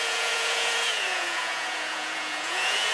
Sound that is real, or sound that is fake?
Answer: fake